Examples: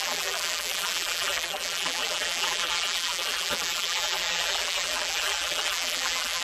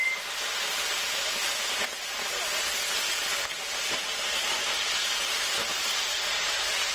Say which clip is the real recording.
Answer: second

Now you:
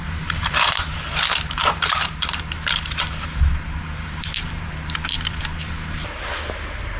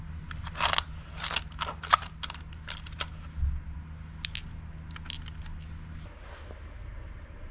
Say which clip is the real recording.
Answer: second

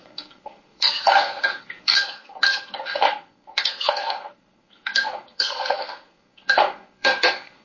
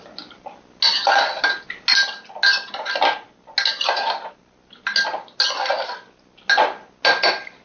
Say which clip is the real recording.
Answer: second